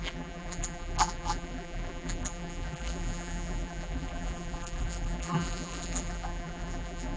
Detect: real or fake fake